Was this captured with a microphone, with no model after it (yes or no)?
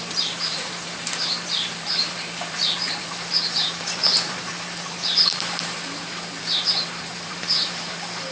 no